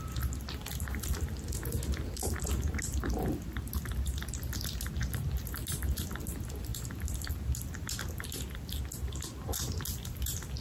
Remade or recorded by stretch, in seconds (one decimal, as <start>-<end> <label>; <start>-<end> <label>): 0.0-10.6 recorded